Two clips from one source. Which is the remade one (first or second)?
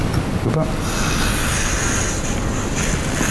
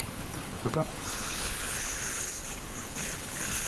second